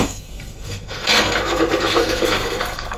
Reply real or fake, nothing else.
fake